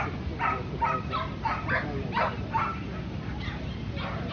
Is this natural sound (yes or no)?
yes